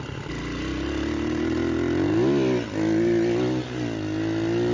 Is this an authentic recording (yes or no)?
yes